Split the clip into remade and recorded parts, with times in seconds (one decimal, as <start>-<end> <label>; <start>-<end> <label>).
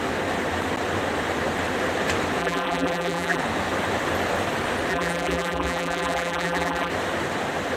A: 0.0-2.4 recorded; 2.4-3.4 remade; 3.4-4.9 recorded; 4.9-6.9 remade; 6.9-7.8 recorded